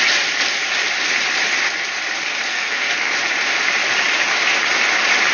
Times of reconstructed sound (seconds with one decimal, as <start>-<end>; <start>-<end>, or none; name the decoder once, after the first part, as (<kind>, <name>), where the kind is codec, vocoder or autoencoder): 2.5-3.1 (codec, SNAC)